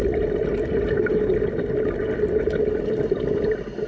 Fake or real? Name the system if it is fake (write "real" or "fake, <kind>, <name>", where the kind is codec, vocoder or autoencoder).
real